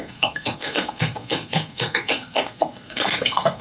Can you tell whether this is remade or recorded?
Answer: remade